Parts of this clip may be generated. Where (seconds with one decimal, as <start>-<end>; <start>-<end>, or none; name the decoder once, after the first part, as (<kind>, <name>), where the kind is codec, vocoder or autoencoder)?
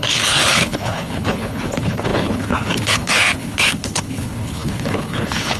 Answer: 0.0-5.6 (codec, HILCodec)